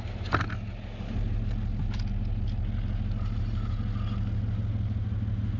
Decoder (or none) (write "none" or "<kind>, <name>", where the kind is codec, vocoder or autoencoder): none